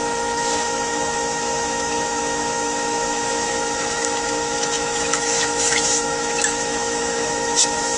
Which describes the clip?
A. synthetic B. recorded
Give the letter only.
A